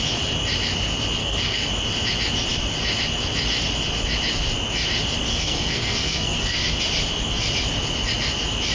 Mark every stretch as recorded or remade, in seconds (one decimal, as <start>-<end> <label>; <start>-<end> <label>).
0.0-1.2 recorded; 1.2-1.7 remade; 1.7-5.3 recorded; 5.3-6.8 remade; 6.8-8.7 recorded